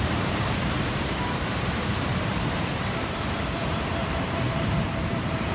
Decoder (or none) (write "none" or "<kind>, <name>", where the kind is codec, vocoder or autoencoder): vocoder, BigVGAN v2